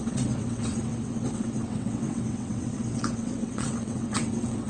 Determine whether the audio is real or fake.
fake